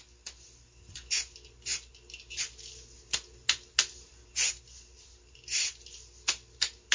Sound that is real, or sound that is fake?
real